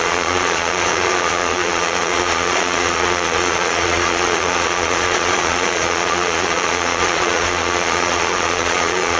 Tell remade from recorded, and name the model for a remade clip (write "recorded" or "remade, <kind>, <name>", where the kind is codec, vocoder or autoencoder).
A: remade, vocoder, Vocos